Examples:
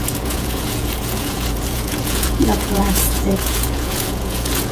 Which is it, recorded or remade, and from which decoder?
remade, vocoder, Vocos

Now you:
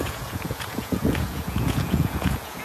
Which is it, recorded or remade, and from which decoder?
remade, vocoder, Vocos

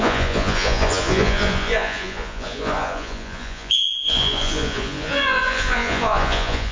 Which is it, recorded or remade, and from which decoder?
remade, vocoder, Vocos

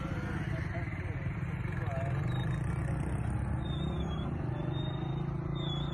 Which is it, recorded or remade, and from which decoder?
recorded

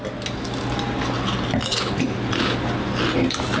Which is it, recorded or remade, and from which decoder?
recorded